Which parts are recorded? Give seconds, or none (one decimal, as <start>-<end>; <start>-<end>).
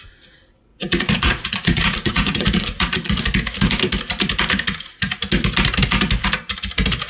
0.0-0.7; 3.2-7.1